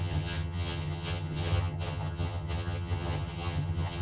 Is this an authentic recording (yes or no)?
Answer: no